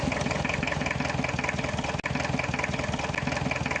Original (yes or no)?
yes